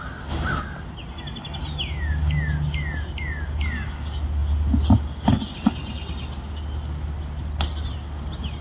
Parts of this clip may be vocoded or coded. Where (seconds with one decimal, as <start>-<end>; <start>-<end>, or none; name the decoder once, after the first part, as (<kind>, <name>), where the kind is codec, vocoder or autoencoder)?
none